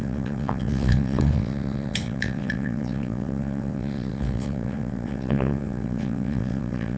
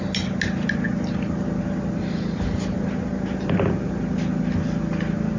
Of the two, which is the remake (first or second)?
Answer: first